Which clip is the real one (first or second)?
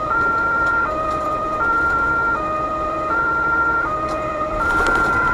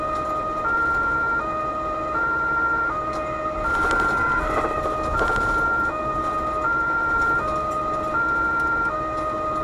second